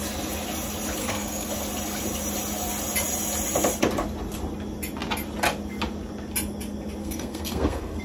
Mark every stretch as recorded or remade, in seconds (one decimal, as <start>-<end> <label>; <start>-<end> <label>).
0.0-1.0 recorded; 1.0-1.5 remade; 1.5-7.0 recorded; 7.0-8.0 remade